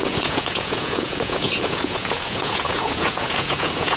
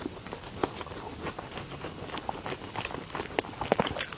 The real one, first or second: second